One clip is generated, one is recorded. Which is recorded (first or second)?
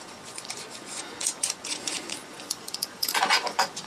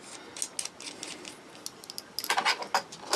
second